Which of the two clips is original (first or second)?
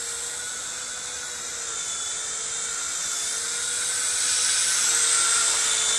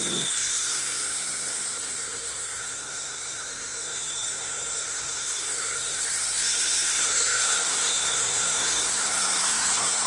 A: first